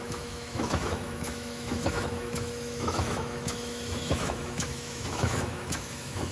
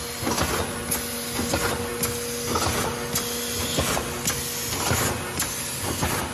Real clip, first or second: second